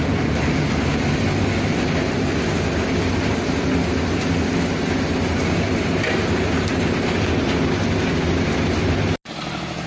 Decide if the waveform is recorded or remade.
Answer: recorded